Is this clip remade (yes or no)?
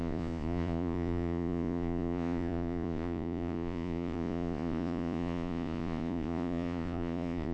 yes